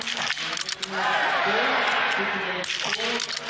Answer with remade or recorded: recorded